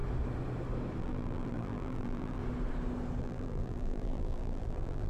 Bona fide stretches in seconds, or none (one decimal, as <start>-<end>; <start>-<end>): 0.0-1.0; 2.4-3.2